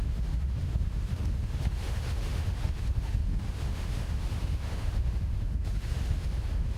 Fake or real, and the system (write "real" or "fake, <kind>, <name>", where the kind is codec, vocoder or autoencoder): fake, autoencoder, DAC-VAE